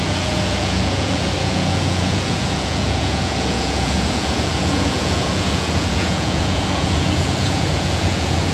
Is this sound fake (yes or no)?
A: yes